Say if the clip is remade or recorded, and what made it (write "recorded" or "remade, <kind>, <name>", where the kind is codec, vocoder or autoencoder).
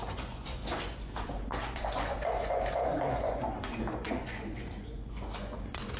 remade, vocoder, Vocos